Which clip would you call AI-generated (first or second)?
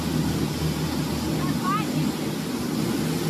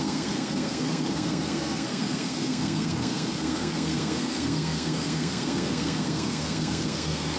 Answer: second